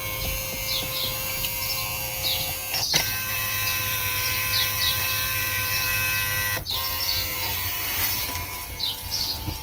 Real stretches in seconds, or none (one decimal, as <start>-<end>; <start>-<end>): 0.0-3.3; 5.9-7.0; 8.6-9.2